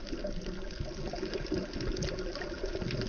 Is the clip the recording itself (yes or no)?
yes